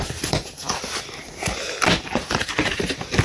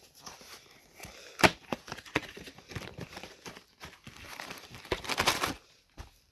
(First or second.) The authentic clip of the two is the first